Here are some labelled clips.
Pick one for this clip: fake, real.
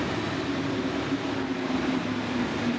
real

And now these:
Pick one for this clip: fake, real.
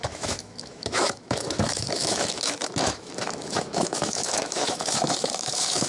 fake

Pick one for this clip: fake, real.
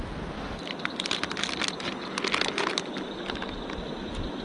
real